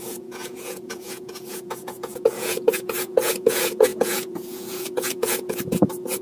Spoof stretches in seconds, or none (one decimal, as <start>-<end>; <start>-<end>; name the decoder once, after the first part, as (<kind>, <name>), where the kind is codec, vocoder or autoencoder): 0.0-6.2 (vocoder, Vocos)